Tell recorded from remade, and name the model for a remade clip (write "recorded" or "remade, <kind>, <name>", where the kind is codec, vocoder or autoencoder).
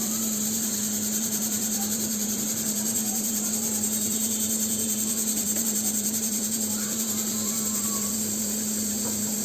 remade, vocoder, BigVGAN v2